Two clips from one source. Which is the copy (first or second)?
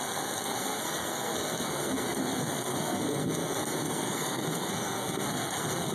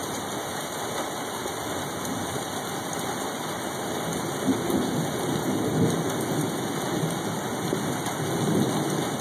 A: first